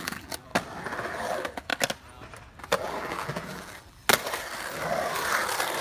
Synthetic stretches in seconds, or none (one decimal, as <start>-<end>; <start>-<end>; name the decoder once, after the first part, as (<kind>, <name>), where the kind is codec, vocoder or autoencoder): 0.0-0.5 (vocoder, BigVGAN v2); 1.1-1.7; 2.6-4.0

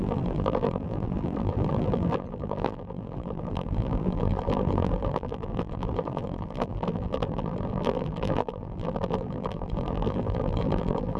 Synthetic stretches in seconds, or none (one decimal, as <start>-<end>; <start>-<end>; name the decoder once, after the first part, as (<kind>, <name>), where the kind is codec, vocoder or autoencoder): 0.0-11.2 (vocoder, BigVGAN v2)

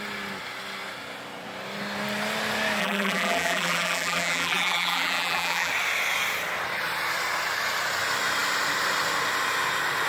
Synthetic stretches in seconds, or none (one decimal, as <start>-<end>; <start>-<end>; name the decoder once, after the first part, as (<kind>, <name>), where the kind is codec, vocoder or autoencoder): 2.8-5.7 (vocoder, BigVGAN v2)

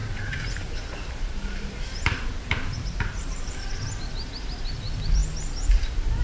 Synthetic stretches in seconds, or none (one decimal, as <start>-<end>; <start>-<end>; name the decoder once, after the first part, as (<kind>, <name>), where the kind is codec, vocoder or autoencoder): 0.0-3.7 (vocoder, BigVGAN v2)

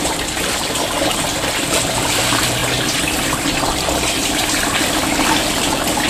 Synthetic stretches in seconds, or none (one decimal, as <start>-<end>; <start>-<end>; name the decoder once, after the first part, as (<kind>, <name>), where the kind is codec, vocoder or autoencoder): 0.0-2.6 (vocoder, BigVGAN v2); 3.4-6.1